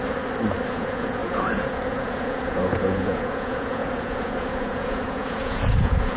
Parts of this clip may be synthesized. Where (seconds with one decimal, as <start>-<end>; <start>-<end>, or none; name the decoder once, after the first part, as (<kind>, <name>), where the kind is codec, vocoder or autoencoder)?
0.7-6.2 (vocoder, Vocos)

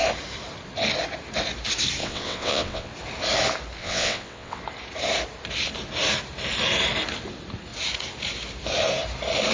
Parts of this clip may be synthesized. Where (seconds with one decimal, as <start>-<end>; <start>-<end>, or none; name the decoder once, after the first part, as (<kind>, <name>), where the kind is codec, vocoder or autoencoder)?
2.0-2.9 (vocoder, WaveNeXt); 3.8-4.6

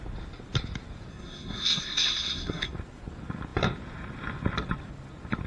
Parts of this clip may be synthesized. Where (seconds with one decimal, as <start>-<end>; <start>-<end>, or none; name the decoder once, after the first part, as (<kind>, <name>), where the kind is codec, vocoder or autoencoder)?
1.1-2.7 (codec, SNAC)

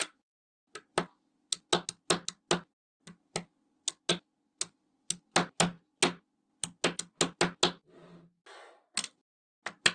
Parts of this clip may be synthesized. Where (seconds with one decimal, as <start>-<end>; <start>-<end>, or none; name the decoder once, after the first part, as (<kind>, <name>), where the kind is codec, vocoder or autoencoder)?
none

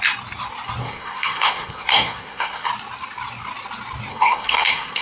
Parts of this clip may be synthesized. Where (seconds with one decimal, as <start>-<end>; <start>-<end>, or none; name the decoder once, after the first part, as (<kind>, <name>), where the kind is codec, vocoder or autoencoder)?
0.8-2.7 (codec, SNAC); 4.1-5.0

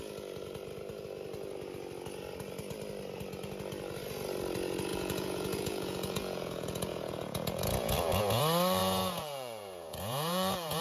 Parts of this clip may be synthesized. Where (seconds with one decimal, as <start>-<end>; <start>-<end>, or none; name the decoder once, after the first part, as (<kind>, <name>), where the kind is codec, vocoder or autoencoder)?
4.9-8.4 (vocoder, Vocos); 8.8-10.8